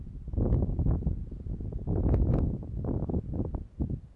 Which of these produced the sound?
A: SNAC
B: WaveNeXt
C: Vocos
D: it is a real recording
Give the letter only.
D